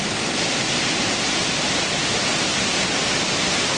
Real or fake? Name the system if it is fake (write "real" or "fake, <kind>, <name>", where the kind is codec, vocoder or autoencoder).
real